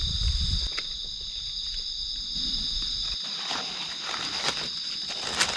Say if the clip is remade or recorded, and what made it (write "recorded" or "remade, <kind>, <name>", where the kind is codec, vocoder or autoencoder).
recorded